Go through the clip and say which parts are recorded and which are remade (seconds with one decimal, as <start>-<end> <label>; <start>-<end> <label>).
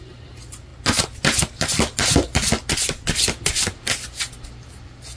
0.0-5.2 recorded